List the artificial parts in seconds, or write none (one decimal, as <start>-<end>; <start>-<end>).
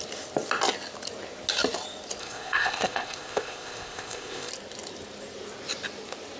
2.2-4.5